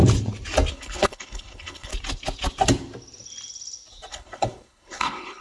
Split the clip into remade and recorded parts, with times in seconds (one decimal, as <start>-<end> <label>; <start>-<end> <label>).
0.0-0.7 recorded; 0.7-1.9 remade; 1.9-4.1 recorded; 4.1-5.4 remade